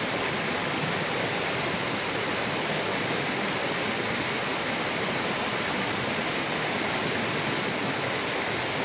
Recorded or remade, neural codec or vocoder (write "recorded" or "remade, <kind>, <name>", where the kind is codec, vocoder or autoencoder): recorded